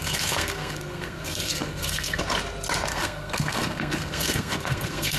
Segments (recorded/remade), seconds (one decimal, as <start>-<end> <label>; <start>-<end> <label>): 0.0-2.2 remade; 2.2-2.9 recorded; 2.9-5.2 remade